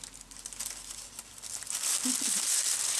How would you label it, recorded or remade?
recorded